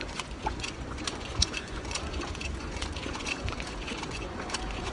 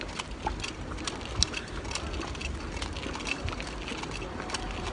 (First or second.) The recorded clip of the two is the second